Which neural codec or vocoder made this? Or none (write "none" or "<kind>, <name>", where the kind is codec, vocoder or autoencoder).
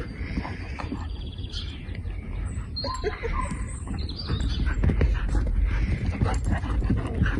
vocoder, BigVGAN v2